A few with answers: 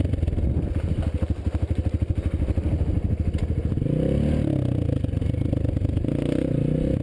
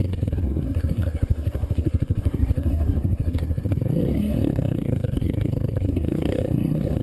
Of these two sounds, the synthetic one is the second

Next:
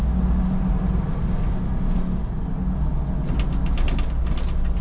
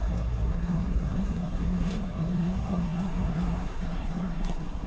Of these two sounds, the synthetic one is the second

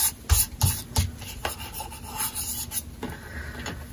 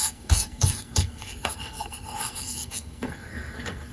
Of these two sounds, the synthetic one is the second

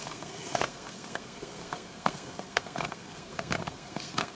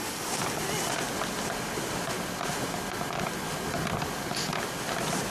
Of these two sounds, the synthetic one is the first